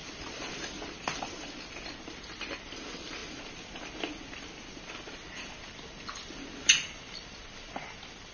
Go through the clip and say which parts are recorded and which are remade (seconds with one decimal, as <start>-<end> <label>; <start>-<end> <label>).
0.0-8.3 recorded